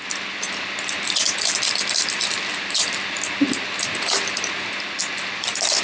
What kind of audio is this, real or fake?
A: real